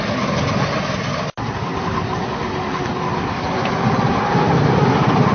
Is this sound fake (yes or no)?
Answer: no